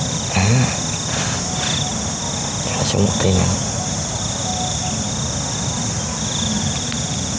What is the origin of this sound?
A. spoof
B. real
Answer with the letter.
B